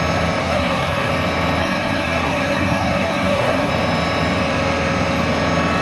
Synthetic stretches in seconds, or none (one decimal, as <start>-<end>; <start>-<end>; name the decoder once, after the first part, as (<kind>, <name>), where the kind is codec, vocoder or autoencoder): 0.4-1.1 (codec, SNAC); 1.6-3.7